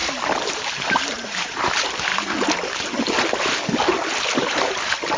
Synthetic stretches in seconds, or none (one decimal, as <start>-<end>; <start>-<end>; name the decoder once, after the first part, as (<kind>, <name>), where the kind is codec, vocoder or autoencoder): 0.7-2.1 (vocoder, BigVGAN v2)